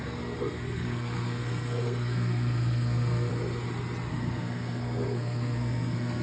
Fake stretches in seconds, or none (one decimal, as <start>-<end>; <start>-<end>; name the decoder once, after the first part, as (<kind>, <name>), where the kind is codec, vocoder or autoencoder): 0.0-3.3 (codec, SNAC); 4.1-6.2